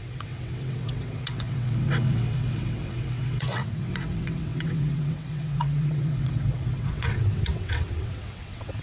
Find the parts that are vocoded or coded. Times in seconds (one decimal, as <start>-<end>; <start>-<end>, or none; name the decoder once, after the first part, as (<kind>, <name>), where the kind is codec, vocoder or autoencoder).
0.0-8.8 (vocoder, WaveNeXt)